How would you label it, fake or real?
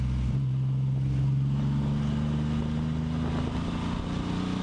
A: real